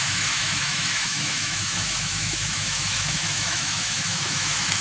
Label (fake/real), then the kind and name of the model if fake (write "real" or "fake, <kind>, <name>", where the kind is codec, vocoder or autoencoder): fake, autoencoder, DAC-VAE